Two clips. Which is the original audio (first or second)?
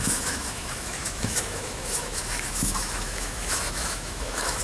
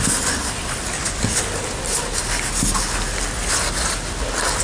second